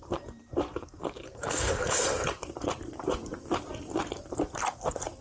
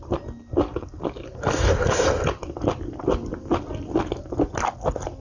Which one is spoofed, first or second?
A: first